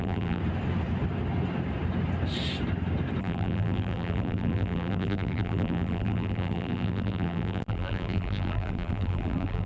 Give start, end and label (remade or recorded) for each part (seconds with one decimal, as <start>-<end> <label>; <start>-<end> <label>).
0.0-0.4 remade; 0.4-3.2 recorded; 3.2-9.7 remade

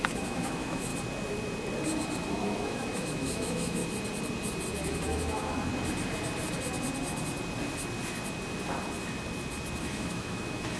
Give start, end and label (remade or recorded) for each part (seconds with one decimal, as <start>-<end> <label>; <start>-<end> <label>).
0.0-0.9 remade; 0.9-2.3 recorded; 2.3-3.8 remade; 3.8-4.8 recorded; 4.8-5.7 remade; 5.7-9.8 recorded; 9.8-10.8 remade

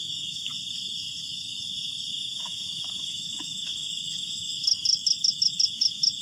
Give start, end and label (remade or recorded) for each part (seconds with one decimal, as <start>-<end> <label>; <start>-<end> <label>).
0.0-0.5 remade; 0.5-2.1 recorded; 2.1-6.2 remade

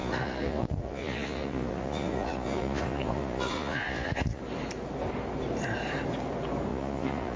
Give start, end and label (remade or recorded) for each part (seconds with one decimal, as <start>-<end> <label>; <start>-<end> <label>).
0.0-4.4 remade; 4.4-6.7 recorded; 6.7-7.4 remade

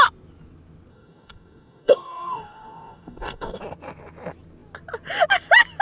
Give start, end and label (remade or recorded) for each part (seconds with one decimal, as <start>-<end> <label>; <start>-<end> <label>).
0.0-0.9 recorded; 0.9-3.6 remade; 3.6-5.8 recorded

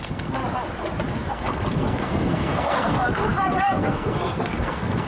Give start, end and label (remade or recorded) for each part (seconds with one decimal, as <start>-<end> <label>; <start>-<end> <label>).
0.0-0.4 remade; 0.4-1.3 recorded; 1.3-5.1 remade

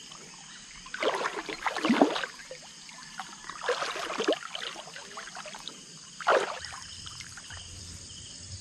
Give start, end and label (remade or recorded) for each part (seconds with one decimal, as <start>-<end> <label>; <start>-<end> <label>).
0.0-8.6 recorded